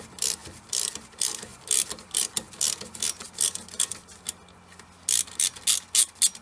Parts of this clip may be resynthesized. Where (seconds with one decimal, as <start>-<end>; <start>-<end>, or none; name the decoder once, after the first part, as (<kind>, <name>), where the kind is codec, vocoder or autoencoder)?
0.4-1.0 (vocoder, BigVGAN v2); 1.5-2.2